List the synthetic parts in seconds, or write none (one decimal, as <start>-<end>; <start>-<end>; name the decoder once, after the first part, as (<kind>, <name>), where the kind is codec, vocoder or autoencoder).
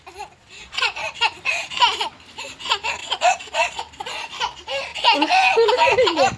0.4-1.2 (vocoder, Vocos); 3.0-3.8